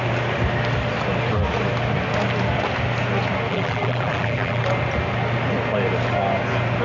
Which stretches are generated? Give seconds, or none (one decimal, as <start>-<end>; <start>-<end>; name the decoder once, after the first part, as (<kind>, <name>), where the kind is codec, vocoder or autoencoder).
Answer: 3.5-4.6 (vocoder, BigVGAN v2)